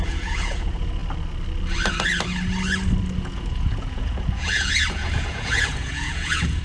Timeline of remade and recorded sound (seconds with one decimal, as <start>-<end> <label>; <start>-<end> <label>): 0.0-1.0 remade; 1.0-3.2 recorded; 3.2-6.6 remade